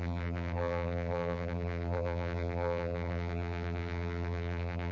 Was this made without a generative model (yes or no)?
no